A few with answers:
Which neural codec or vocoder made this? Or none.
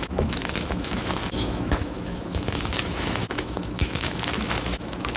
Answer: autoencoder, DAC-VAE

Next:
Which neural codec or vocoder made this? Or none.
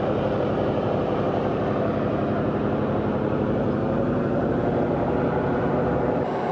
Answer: vocoder, BigVGAN v2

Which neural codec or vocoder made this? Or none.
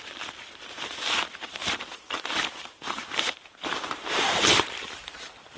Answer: vocoder, BigVGAN v2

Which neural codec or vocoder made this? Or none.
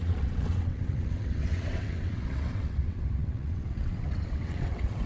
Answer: vocoder, WaveNeXt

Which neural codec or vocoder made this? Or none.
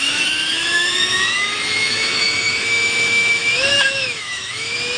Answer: autoencoder, DAC-VAE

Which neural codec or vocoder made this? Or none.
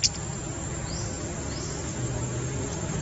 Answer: none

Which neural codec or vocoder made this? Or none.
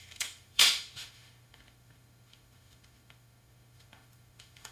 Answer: autoencoder, DAC-VAE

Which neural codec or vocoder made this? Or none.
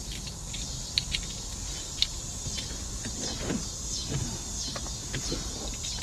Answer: none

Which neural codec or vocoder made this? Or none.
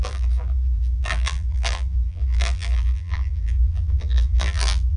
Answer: vocoder, BigVGAN v2